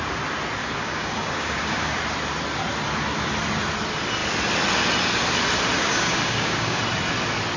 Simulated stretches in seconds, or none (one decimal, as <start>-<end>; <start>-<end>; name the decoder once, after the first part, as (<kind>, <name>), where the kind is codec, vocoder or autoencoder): 0.6-2.0 (codec, DAC); 5.8-6.8